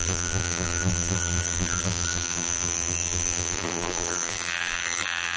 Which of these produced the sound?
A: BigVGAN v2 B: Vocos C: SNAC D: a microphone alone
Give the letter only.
A